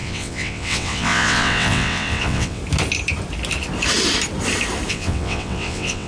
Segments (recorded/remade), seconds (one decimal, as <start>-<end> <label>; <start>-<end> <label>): 0.0-2.6 remade; 2.6-4.9 recorded; 4.9-6.1 remade